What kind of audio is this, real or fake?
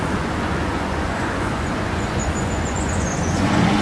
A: fake